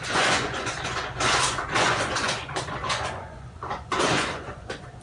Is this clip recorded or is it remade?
remade